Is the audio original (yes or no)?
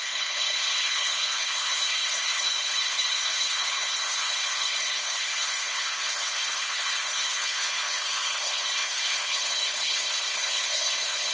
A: no